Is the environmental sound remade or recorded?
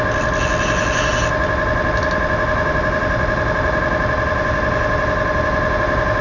recorded